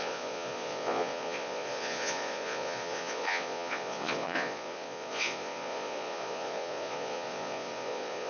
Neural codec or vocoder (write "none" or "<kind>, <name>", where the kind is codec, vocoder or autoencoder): vocoder, Vocos